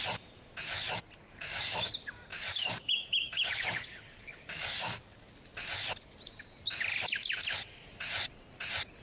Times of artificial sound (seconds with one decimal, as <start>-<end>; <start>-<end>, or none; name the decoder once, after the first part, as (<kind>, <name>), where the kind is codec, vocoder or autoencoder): 1.2-1.9 (codec, DAC); 2.3-5.3

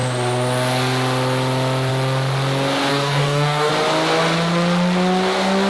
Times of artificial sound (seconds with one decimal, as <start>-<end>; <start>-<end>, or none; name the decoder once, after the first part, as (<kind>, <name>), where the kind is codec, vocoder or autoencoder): 2.9-3.7 (codec, DAC)

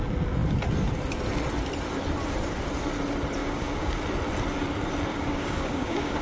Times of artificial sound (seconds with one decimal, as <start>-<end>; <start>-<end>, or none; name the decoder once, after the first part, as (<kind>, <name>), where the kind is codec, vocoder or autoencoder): 3.4-4.0 (codec, DAC); 5.1-6.2

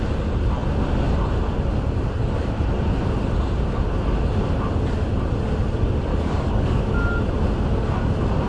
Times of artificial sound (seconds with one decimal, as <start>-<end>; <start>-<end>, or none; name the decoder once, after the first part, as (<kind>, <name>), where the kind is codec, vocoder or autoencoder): 6.1-6.9 (codec, DAC)

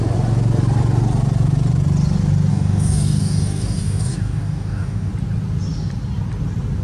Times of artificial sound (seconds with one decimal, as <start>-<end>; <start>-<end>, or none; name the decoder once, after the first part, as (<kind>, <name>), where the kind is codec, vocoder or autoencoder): 2.5-5.1 (codec, DAC)